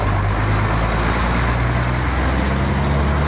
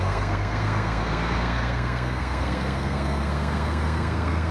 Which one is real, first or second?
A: first